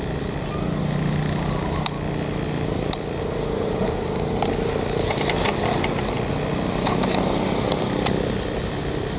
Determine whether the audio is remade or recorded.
recorded